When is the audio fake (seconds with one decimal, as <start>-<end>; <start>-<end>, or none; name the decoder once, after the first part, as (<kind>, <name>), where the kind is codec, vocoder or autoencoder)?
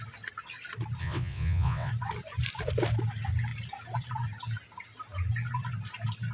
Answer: 1.0-1.9 (vocoder, WaveNeXt)